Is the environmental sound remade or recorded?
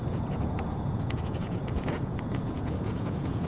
remade